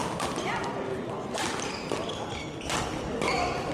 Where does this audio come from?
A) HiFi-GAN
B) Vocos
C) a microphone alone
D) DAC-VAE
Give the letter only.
C